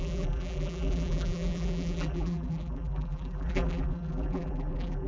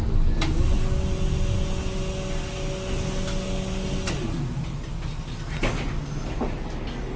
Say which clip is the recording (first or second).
second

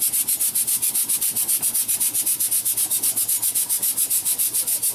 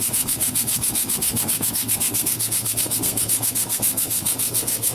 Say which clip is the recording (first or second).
first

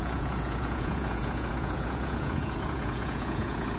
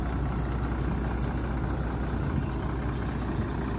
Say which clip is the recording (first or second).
second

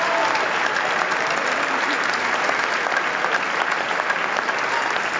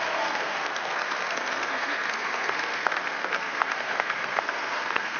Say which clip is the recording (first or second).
first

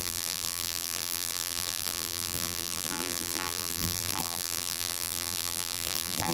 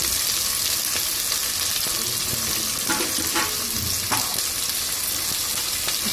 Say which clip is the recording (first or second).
second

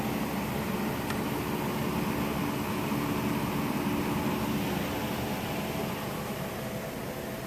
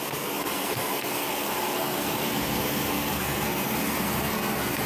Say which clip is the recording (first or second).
first